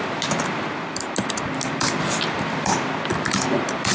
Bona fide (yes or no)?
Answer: yes